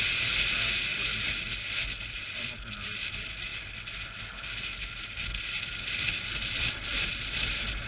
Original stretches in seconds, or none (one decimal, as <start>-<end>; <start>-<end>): 0.0-7.9